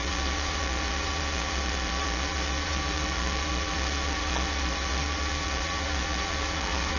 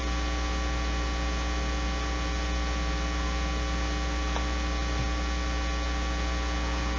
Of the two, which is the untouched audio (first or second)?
second